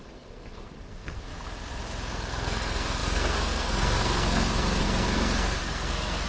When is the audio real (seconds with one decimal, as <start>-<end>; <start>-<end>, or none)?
1.3-2.1